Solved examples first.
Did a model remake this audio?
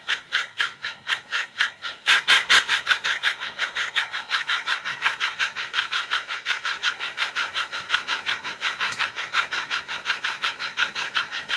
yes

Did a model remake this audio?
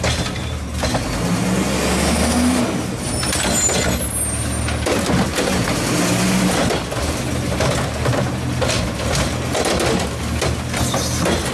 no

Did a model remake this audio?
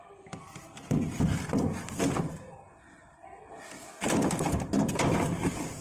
no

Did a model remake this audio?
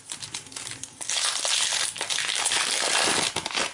no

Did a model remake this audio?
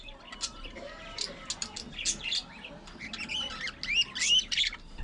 no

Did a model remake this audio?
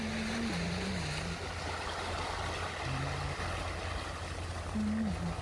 no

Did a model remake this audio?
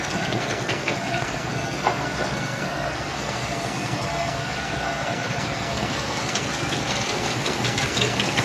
yes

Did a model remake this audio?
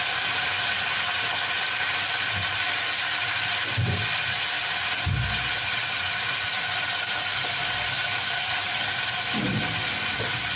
no